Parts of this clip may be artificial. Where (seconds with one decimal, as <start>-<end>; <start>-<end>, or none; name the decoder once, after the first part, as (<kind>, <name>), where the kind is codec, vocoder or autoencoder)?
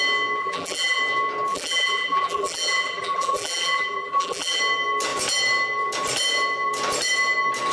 0.4-1.0 (vocoder, BigVGAN v2); 1.5-4.6